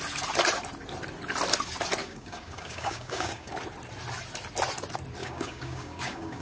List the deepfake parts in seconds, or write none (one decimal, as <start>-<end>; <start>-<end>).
2.0-3.5; 5.2-6.4